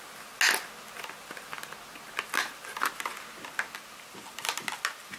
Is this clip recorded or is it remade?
recorded